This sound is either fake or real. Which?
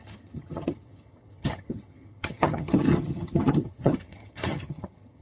fake